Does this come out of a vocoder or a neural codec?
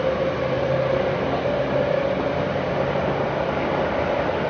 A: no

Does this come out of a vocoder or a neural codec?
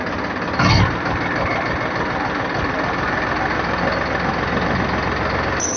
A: no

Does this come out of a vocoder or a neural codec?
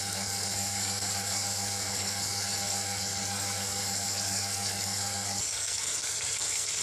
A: yes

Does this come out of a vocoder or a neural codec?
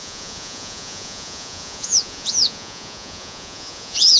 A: yes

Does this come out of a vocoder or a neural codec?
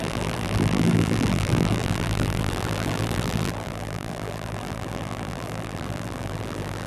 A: yes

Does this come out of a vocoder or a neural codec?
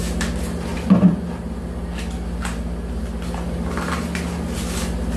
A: no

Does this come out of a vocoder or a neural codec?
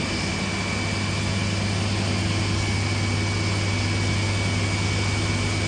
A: no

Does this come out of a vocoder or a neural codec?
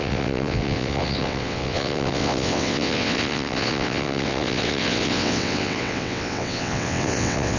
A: yes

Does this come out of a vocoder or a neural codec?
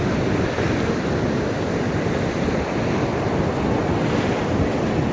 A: no